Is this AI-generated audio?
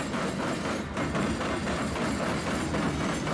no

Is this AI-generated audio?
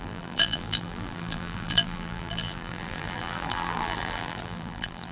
yes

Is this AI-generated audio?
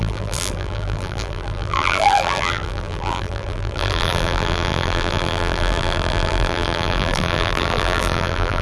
yes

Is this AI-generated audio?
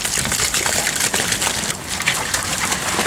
no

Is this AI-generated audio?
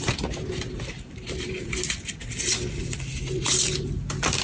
yes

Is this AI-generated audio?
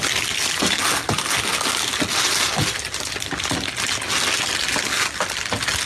no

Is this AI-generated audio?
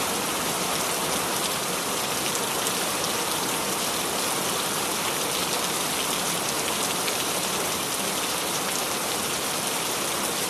yes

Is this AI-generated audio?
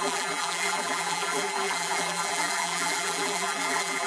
yes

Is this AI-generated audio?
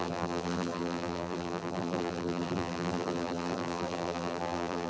yes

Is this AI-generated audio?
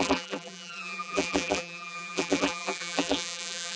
yes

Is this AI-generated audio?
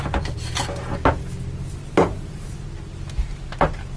no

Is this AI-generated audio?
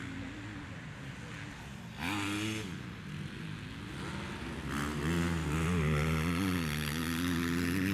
no